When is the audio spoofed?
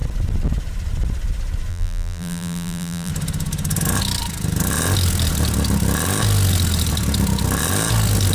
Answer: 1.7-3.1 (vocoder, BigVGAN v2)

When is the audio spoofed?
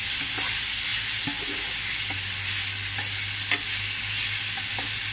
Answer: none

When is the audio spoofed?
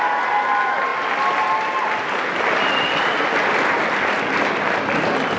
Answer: none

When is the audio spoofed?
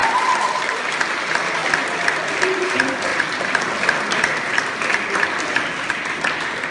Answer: 0.0-0.9 (vocoder, BigVGAN v2)